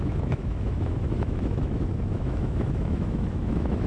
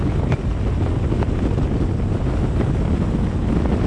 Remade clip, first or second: first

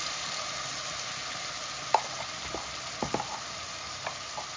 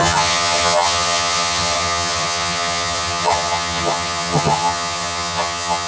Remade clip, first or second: second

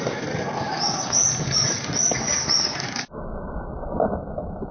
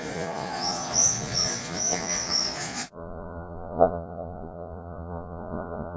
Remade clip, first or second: second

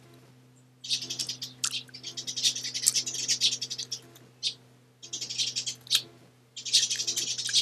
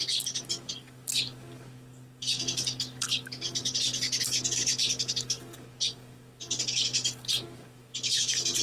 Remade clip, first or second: second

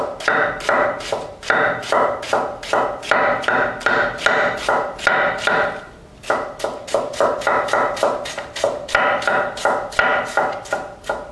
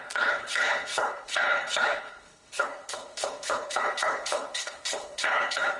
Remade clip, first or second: second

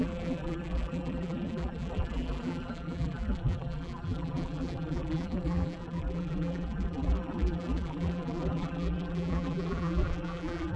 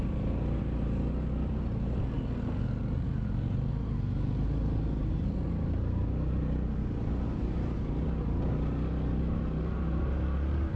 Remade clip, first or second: first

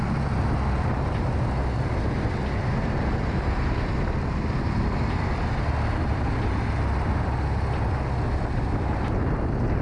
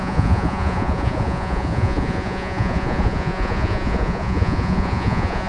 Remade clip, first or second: second